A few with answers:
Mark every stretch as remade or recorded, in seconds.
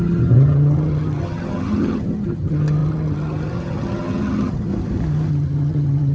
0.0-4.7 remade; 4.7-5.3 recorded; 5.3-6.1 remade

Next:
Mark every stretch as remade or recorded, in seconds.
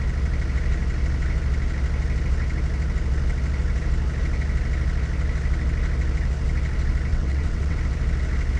0.0-7.1 recorded; 7.1-7.8 remade; 7.8-8.6 recorded